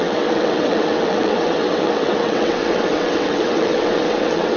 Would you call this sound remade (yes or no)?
yes